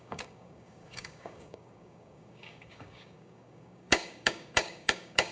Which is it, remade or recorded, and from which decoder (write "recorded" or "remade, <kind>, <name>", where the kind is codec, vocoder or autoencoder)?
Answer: remade, codec, DAC